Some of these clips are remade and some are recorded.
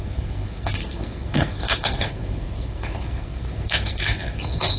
remade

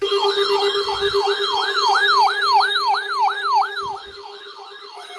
remade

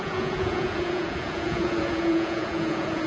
remade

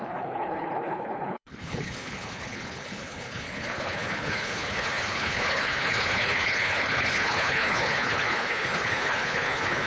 remade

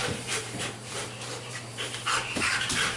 remade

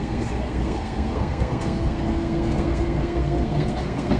remade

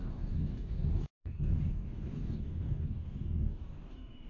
remade